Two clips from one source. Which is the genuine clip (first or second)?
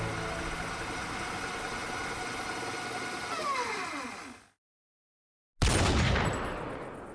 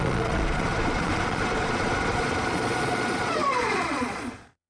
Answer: first